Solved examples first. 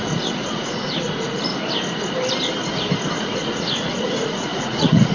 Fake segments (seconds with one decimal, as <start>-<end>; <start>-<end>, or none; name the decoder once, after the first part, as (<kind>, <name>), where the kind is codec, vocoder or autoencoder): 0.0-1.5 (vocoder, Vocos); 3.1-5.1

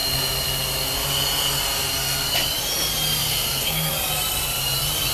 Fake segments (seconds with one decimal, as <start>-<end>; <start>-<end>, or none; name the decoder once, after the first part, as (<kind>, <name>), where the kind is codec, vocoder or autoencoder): 3.2-3.9 (codec, SNAC)

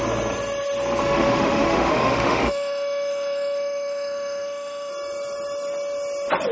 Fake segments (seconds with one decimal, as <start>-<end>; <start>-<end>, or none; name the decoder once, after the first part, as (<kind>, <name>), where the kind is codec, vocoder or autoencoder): 1.0-4.9 (autoencoder, DAC-VAE)

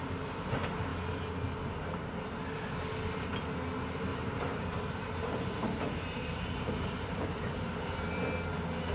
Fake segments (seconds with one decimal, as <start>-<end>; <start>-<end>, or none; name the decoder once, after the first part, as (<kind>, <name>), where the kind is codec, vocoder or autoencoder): 4.1-8.1 (vocoder, BigVGAN v2)